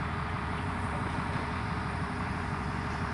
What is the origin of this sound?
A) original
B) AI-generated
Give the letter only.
B